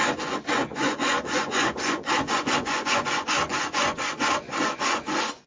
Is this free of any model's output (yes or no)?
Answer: no